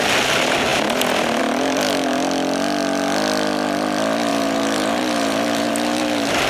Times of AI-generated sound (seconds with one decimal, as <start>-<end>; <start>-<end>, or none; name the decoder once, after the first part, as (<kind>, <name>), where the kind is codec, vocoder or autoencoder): 4.3-5.7 (vocoder, BigVGAN v2)